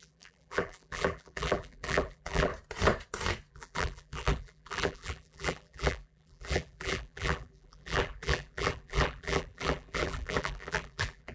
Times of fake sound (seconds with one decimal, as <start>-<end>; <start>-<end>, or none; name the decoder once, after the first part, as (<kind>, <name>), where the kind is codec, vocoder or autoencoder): 0.0-2.5 (vocoder, BigVGAN v2); 3.5-11.3